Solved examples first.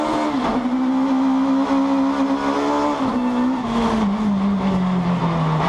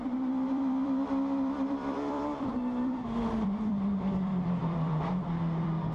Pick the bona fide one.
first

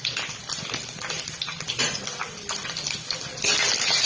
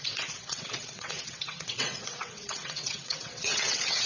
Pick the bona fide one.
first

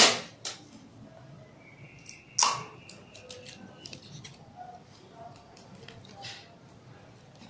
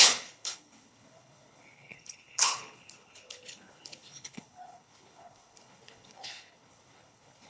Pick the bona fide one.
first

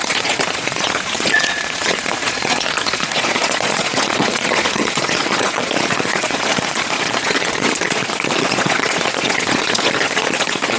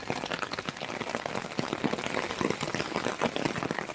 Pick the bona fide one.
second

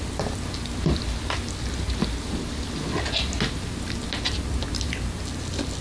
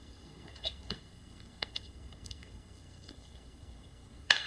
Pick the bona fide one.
first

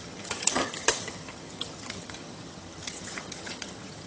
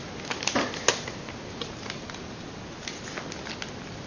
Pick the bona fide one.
second